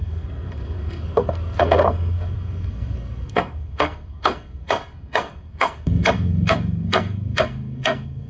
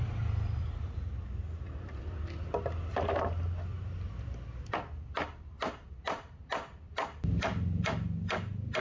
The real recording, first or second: second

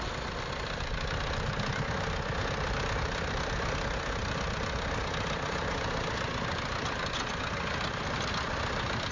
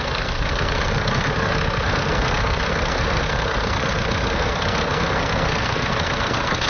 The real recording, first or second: first